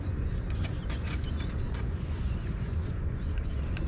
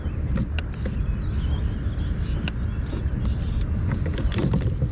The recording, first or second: second